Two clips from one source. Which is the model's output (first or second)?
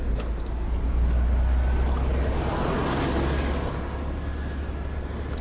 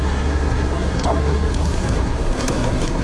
second